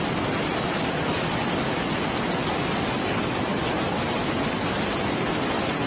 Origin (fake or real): real